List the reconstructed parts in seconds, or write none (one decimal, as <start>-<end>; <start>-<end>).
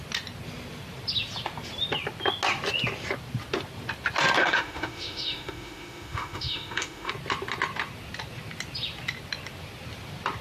4.4-7.1